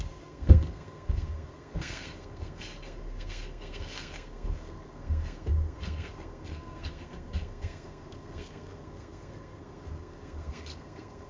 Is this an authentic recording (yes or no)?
no